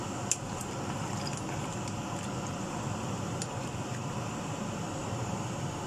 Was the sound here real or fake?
real